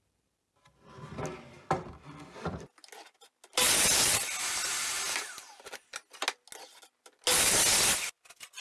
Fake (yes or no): no